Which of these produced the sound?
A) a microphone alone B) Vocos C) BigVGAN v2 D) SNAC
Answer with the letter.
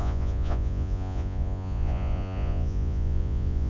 B